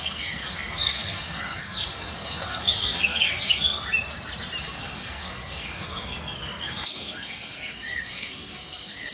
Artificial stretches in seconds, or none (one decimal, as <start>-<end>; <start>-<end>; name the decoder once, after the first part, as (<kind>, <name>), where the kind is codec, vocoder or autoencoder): 0.0-3.8 (codec, SNAC); 4.6-9.1